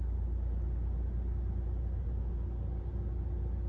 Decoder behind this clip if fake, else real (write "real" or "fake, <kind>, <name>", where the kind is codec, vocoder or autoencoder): real